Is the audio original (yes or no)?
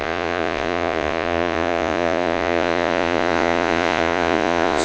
no